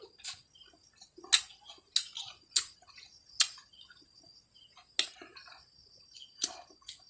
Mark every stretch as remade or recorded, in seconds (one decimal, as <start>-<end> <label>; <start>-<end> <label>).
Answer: 0.0-5.3 recorded; 5.3-7.1 remade

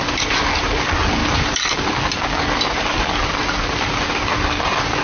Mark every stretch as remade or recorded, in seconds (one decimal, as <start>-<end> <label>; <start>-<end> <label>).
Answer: 0.0-1.2 recorded; 1.2-1.9 remade; 1.9-5.0 recorded

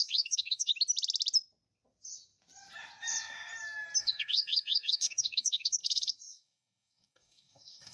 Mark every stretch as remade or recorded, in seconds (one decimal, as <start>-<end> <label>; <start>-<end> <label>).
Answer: 0.0-0.7 remade; 0.7-4.0 recorded; 4.0-7.9 remade

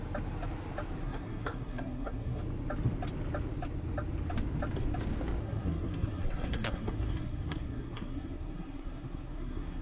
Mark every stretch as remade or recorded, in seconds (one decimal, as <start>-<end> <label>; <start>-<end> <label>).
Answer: 0.0-1.0 recorded; 1.0-2.4 remade; 2.4-5.4 recorded; 5.4-9.8 remade

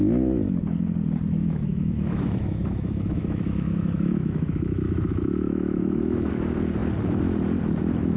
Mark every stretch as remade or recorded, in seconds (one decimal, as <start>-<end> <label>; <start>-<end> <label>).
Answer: 0.0-1.4 recorded; 1.4-6.3 remade; 6.3-8.2 recorded

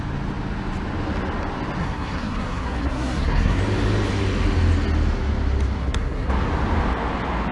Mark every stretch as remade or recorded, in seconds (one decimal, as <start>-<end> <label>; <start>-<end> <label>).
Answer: 0.0-1.8 recorded; 1.8-3.6 remade; 3.6-5.8 recorded; 5.8-6.3 remade; 6.3-7.5 recorded

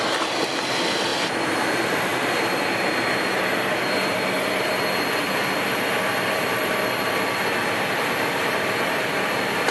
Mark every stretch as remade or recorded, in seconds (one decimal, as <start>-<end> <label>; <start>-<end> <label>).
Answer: 0.0-2.1 remade; 2.1-5.6 recorded; 5.6-9.7 remade